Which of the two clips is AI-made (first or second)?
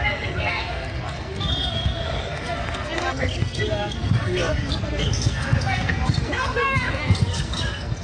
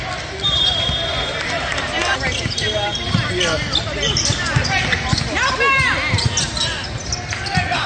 first